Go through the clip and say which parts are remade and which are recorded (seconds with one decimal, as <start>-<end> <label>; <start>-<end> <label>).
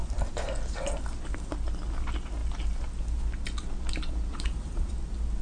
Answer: 0.0-4.3 recorded; 4.3-4.9 remade; 4.9-5.4 recorded